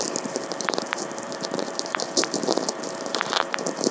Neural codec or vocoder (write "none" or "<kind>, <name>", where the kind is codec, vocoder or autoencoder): vocoder, BigVGAN v2